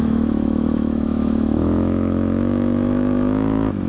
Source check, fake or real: fake